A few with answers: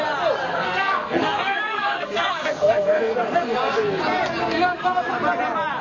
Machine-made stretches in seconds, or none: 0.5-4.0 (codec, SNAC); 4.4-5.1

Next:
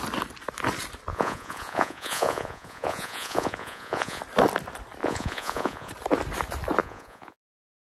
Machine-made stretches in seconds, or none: 1.1-4.2 (vocoder, Vocos); 5.0-5.9; 6.8-7.8

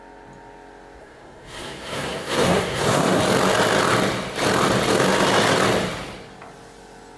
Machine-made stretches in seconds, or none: 1.0-3.2 (codec, SNAC)

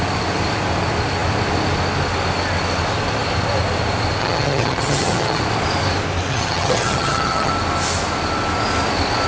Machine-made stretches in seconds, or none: 4.2-5.4 (vocoder, HiFi-GAN); 6.3-7.5

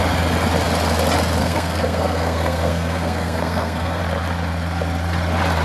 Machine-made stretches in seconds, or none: 1.4-4.0 (codec, SNAC)

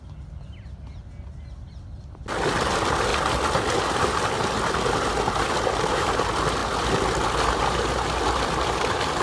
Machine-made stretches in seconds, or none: none

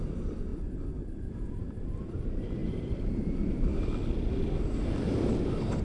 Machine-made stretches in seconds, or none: 0.0-3.7 (vocoder, BigVGAN v2); 5.3-5.8